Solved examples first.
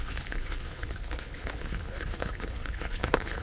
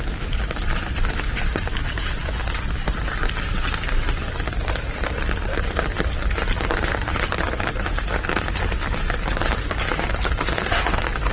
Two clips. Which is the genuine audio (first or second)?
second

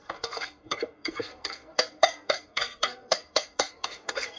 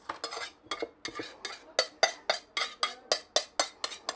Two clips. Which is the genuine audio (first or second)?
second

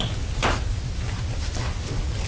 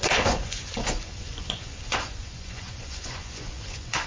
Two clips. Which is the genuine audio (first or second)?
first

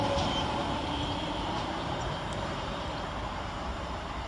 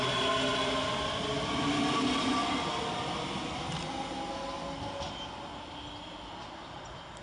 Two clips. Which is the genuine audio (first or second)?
second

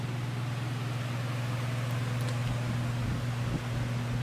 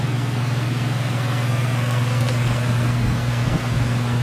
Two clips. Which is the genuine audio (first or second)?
first